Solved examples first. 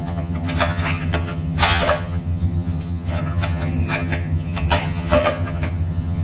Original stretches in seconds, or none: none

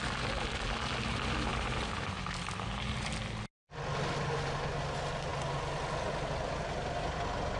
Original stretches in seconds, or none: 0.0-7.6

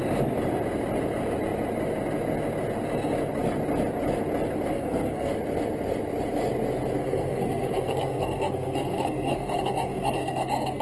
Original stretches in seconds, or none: 0.0-4.7; 5.3-7.0

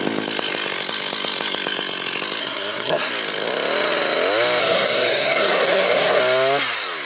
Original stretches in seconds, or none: 0.0-2.4; 3.1-4.6; 6.2-7.1

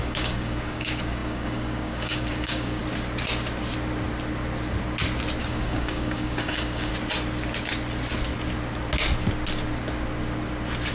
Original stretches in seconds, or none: 2.8-5.4; 6.9-10.9

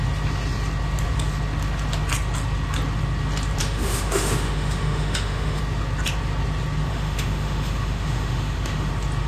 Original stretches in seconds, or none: 0.0-3.6; 5.6-6.9; 8.9-9.3